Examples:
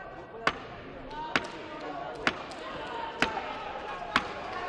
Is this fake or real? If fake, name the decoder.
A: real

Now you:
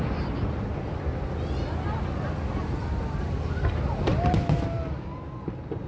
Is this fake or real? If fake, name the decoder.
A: real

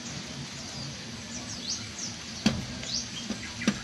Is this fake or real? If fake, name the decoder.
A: real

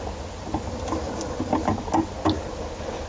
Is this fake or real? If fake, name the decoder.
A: real